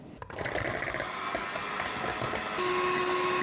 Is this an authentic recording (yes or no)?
yes